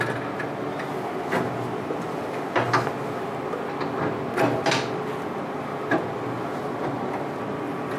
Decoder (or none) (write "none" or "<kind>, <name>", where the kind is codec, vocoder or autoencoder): none